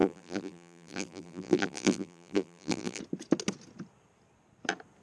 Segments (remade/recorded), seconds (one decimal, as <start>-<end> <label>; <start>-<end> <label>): 0.0-3.0 remade; 3.0-5.0 recorded

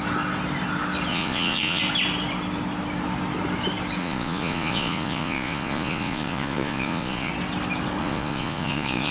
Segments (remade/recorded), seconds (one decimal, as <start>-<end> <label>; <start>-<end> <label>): 0.0-1.1 recorded; 1.1-1.8 remade; 1.8-4.0 recorded; 4.0-7.3 remade; 7.3-8.0 recorded; 8.0-9.1 remade

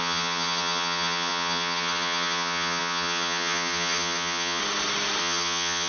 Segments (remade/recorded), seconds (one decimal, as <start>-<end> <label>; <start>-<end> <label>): 0.0-4.6 remade; 4.6-5.2 recorded; 5.2-5.9 remade

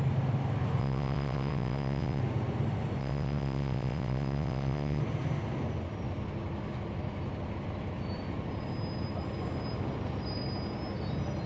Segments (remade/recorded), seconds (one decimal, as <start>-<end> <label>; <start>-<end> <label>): 0.0-0.8 recorded; 0.8-2.2 remade; 2.2-3.0 recorded; 3.0-5.0 remade; 5.0-11.5 recorded

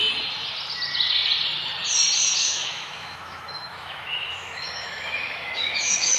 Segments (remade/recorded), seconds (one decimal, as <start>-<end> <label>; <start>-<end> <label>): 0.0-2.4 recorded; 2.4-6.2 remade

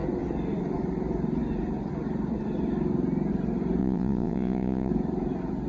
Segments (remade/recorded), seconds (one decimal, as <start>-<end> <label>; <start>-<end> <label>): 0.0-3.8 recorded; 3.8-4.9 remade; 4.9-5.7 recorded